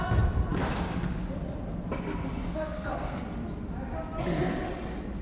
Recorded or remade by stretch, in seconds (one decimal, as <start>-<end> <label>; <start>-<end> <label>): 0.0-2.5 recorded; 2.5-3.2 remade; 3.2-5.2 recorded